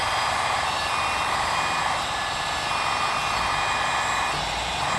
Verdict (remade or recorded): recorded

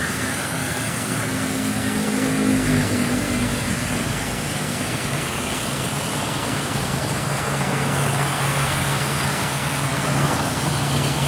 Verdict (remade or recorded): remade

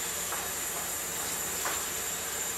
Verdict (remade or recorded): remade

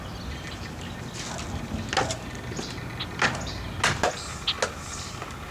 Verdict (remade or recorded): recorded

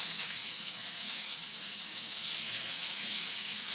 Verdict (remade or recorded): remade